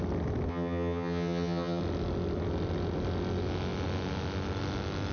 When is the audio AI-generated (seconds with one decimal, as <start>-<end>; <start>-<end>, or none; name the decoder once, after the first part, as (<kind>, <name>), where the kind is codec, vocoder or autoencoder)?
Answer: 0.5-1.8 (vocoder, HiFi-GAN)